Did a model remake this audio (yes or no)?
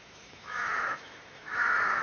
yes